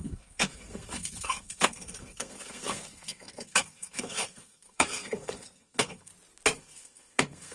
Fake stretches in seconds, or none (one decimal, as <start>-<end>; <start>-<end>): 0.0-6.1; 6.6-7.5